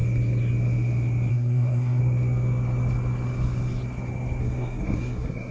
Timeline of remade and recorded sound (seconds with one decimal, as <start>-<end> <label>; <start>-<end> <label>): 0.0-1.3 recorded; 1.3-2.0 remade; 2.0-4.4 recorded; 4.4-5.5 remade